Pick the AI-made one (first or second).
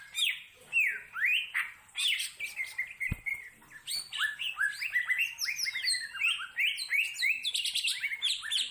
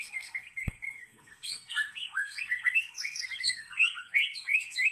second